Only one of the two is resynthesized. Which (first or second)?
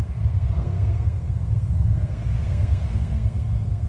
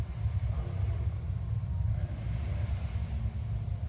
first